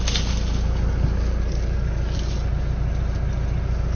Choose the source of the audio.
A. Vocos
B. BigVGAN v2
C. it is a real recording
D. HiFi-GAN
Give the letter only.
C